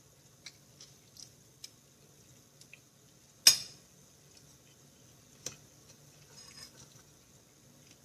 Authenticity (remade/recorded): recorded